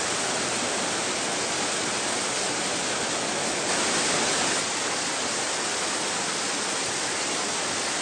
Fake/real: real